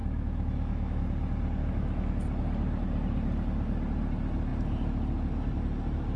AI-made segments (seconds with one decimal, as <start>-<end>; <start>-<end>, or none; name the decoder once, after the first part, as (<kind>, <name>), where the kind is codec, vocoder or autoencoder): 0.0-1.0 (autoencoder, DAC-VAE); 1.6-2.1

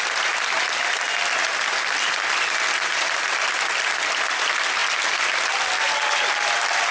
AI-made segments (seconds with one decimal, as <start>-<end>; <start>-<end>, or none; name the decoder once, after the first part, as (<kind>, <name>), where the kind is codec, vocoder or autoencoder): none

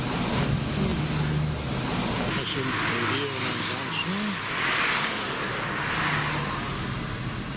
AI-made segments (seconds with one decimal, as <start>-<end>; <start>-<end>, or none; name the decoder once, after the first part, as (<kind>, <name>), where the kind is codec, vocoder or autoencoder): none

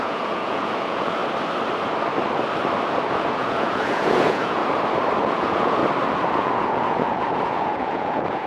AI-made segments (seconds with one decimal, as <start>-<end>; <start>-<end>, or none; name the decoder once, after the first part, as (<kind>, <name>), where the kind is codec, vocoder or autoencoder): 0.0-1.2 (vocoder, Vocos); 3.1-4.6; 5.2-5.8; 6.3-8.5

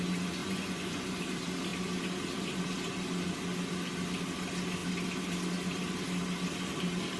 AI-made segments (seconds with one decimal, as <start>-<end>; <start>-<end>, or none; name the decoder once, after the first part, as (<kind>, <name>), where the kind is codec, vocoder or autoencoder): 0.4-1.2 (vocoder, Vocos)

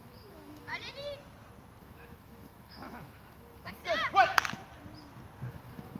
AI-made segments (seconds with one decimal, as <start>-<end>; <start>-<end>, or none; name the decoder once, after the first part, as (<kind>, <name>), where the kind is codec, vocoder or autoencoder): 0.0-0.7 (autoencoder, DAC-VAE); 1.8-3.8; 5.5-6.0

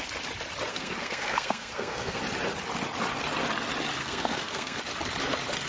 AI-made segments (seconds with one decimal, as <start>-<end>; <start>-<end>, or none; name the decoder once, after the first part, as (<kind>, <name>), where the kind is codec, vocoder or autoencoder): 0.7-2.2 (codec, SNAC); 4.0-4.8